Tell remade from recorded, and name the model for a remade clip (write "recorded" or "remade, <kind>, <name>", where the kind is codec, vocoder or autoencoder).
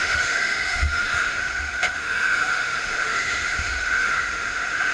remade, autoencoder, DAC-VAE